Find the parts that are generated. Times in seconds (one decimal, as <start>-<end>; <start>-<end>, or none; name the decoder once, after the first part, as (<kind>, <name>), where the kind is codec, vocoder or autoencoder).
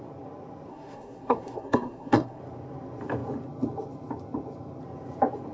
0.7-2.4 (codec, SNAC)